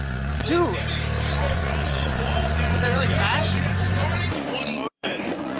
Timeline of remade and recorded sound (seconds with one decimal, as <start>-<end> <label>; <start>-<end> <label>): 0.0-0.4 remade; 0.4-1.3 recorded; 1.3-5.6 remade

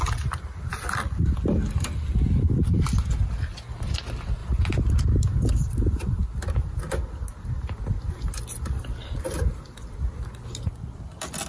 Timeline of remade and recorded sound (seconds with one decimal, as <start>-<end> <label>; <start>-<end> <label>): 0.0-4.4 recorded; 4.4-4.9 remade; 4.9-11.5 recorded

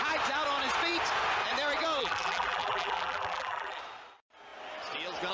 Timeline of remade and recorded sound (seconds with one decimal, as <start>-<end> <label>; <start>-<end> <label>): 0.0-2.0 recorded; 2.0-3.8 remade; 3.8-5.3 recorded